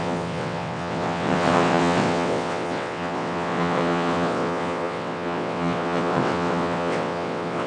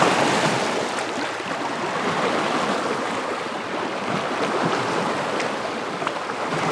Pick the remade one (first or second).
first